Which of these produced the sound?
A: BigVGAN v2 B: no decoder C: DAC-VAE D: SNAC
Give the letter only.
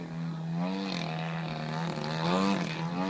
B